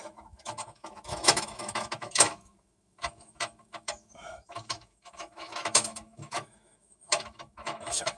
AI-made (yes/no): yes